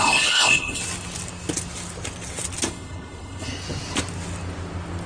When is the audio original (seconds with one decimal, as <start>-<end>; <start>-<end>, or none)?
0.8-2.7; 3.5-5.1